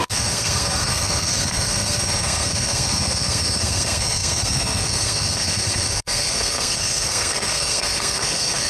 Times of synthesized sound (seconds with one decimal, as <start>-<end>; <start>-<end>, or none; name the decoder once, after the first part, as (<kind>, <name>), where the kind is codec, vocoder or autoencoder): 0.0-8.7 (codec, SNAC)